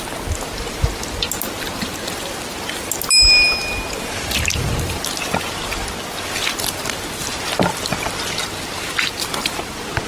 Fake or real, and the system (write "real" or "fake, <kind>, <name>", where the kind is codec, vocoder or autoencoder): real